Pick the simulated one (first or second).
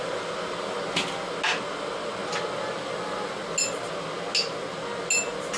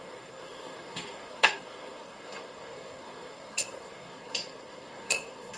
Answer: second